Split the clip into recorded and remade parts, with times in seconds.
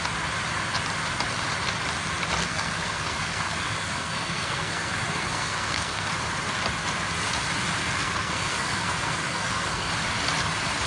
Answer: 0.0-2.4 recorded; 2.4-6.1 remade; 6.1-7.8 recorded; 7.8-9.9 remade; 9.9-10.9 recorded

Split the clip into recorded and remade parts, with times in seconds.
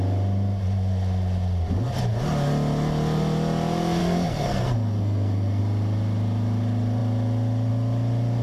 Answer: 0.0-4.0 recorded; 4.0-5.6 remade; 5.6-8.4 recorded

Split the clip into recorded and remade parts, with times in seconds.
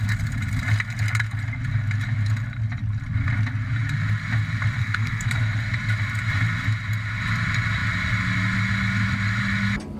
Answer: 0.0-4.8 recorded; 4.8-5.4 remade; 5.4-10.0 recorded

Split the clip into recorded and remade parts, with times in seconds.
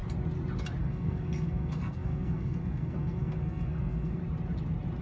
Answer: 0.0-0.8 recorded; 0.8-4.2 remade; 4.2-5.0 recorded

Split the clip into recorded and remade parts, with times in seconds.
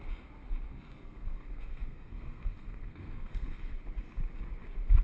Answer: 0.0-0.7 recorded; 0.7-3.7 remade; 3.7-5.0 recorded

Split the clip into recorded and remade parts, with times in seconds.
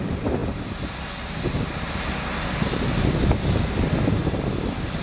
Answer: 0.0-5.0 recorded